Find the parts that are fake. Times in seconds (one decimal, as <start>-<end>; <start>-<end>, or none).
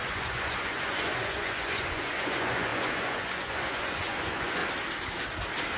0.0-4.6